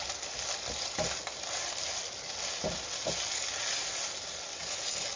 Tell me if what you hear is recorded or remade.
recorded